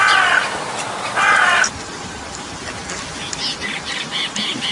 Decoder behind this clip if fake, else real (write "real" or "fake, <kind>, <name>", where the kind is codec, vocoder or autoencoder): real